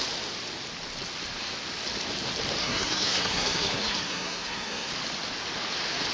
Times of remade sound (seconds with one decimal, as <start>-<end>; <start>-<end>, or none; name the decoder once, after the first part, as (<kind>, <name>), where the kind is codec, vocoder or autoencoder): 2.6-4.9 (codec, SNAC)